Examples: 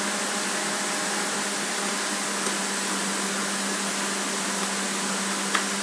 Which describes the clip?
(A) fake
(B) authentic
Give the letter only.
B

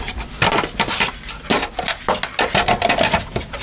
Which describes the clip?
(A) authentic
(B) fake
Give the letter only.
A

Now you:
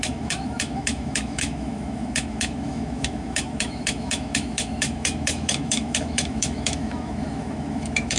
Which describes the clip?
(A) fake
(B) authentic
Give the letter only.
A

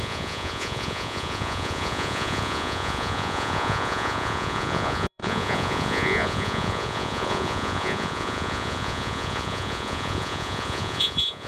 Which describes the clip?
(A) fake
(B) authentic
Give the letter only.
A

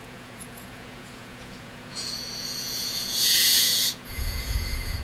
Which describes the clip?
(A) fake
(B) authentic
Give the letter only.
A